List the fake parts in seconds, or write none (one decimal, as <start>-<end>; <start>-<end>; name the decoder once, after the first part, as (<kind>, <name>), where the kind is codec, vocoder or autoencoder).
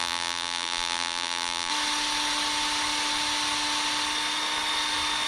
0.0-1.7 (vocoder, BigVGAN v2)